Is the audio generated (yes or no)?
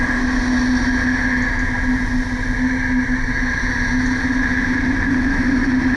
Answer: no